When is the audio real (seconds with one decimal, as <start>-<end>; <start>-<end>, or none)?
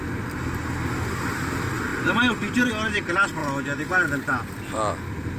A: 0.0-5.4